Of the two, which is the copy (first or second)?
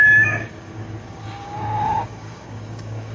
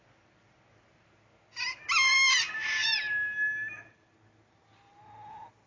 first